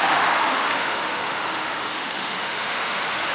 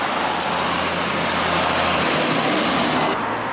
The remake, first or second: first